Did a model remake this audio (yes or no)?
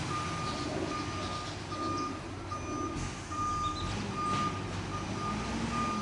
no